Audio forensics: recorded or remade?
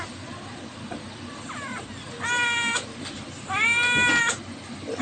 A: recorded